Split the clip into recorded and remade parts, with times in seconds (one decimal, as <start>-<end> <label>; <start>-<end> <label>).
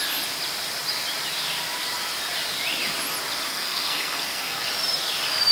0.0-3.5 recorded; 3.5-4.7 remade; 4.7-5.5 recorded